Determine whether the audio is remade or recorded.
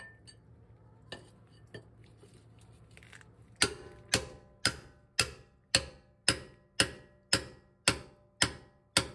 recorded